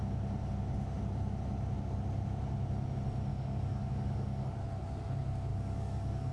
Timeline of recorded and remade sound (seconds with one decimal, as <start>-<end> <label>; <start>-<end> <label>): 0.0-3.3 recorded; 3.3-4.6 remade; 4.6-5.5 recorded; 5.5-6.3 remade